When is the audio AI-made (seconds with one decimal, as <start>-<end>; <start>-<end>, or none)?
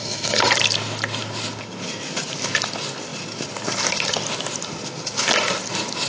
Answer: 0.0-0.5